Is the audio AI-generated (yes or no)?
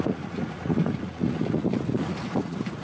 yes